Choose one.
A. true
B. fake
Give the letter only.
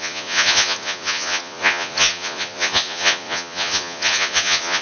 B